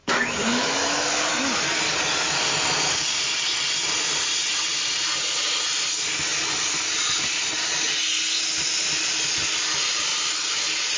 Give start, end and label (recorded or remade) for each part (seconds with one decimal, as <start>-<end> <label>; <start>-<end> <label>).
0.0-1.6 remade; 1.6-11.0 recorded